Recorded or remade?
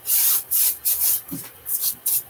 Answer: remade